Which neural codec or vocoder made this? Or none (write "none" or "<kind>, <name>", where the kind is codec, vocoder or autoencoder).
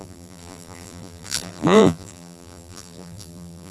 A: vocoder, BigVGAN v2